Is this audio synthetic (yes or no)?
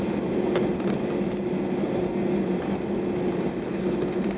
no